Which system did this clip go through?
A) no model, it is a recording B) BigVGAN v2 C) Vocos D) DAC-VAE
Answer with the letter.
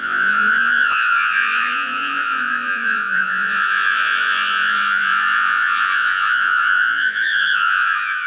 C